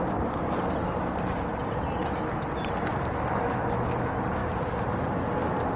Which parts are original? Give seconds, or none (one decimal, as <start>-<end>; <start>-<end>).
0.0-5.8